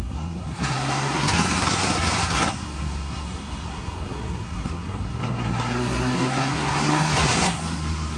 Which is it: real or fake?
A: fake